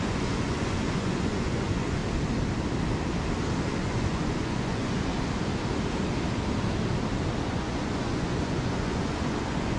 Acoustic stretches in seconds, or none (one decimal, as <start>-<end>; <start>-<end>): 2.0-3.8; 5.1-7.4